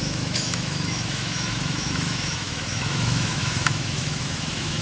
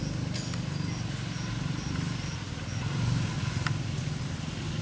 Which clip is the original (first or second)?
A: second